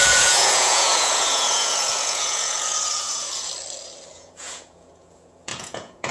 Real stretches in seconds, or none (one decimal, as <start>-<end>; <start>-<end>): 3.5-4.1

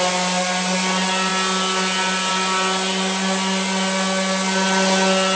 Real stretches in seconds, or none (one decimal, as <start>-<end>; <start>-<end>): 0.0-5.4